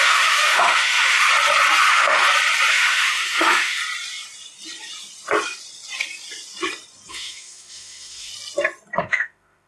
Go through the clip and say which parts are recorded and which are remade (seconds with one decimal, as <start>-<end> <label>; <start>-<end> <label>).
0.0-1.3 remade; 1.3-1.8 recorded; 1.8-2.2 remade; 2.2-2.7 recorded; 2.7-3.8 remade; 3.8-7.1 recorded; 7.1-8.3 remade; 8.3-9.0 recorded; 9.0-9.7 remade